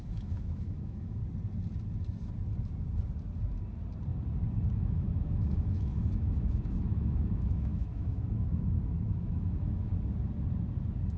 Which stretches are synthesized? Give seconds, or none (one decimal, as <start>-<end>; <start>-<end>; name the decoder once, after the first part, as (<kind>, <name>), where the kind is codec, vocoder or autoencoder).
0.0-1.2 (autoencoder, DAC-VAE); 4.7-9.9